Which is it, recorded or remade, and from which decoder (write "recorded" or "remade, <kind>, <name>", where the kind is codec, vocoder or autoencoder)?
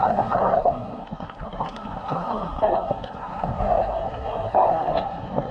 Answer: remade, codec, SNAC